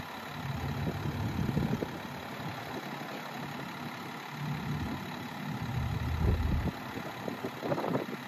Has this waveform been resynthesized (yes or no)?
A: no